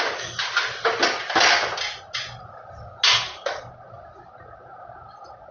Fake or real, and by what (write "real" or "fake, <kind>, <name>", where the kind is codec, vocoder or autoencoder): real